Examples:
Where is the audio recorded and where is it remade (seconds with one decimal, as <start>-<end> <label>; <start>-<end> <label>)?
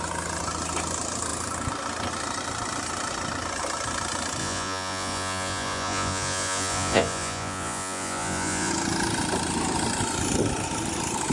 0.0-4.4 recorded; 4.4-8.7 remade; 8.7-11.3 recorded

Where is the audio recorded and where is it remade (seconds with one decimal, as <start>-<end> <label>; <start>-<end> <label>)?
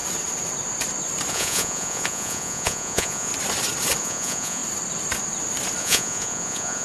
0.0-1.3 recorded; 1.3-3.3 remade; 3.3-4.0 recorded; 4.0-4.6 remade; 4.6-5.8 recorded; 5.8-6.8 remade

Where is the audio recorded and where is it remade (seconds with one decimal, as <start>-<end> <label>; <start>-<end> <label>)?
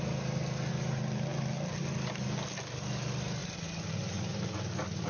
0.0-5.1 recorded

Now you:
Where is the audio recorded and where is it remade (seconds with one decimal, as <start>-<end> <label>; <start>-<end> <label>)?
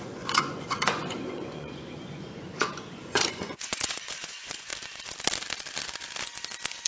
0.0-4.7 remade; 4.7-6.9 recorded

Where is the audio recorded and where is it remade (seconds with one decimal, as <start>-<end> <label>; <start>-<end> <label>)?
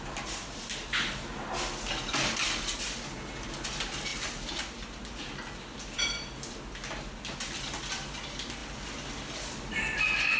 0.0-10.4 recorded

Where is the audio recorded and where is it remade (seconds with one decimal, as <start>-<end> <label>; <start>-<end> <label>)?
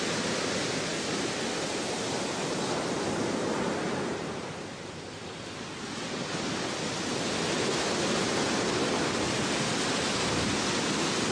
0.0-11.3 recorded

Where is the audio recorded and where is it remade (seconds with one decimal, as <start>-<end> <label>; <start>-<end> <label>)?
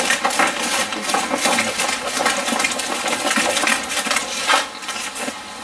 0.0-5.6 recorded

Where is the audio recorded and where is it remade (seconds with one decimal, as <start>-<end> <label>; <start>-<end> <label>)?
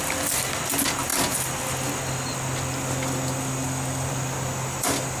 0.0-5.2 recorded